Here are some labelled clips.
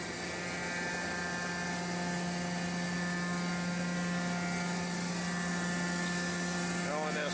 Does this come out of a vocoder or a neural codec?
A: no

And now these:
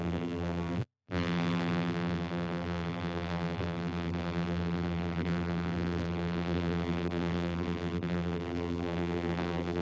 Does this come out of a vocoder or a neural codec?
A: yes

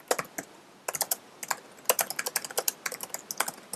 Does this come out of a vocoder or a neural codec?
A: no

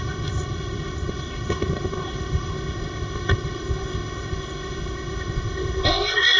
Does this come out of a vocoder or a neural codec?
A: yes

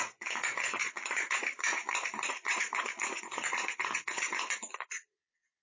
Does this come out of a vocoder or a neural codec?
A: yes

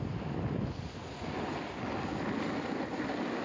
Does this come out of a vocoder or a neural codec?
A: no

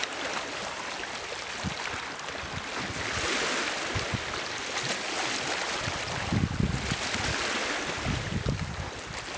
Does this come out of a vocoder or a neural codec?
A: no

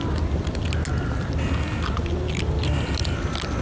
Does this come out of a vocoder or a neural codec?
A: no